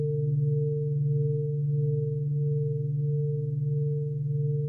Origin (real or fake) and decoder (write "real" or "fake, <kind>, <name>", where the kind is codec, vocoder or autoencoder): real